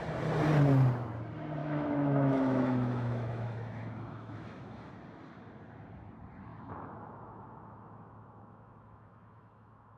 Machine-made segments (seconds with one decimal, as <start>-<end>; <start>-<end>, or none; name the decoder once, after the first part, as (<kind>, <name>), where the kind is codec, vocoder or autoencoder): 1.6-4.9 (autoencoder, DAC-VAE); 6.5-10.0